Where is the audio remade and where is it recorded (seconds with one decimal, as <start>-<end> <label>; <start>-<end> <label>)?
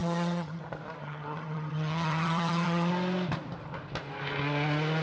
0.0-0.6 remade; 0.6-1.0 recorded; 1.0-2.9 remade; 2.9-5.0 recorded